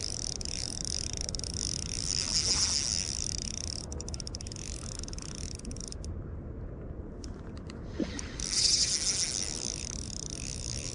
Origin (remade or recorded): recorded